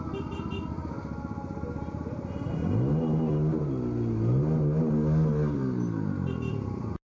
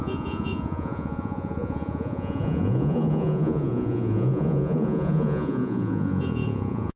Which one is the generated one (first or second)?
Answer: second